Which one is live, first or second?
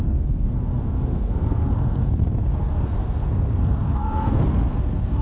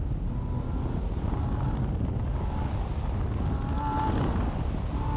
second